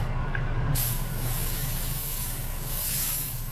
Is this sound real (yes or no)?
no